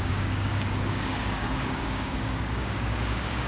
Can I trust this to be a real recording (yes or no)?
no